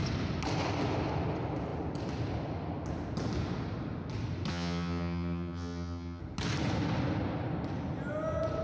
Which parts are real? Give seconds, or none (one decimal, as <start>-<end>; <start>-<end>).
0.0-4.5; 6.2-8.6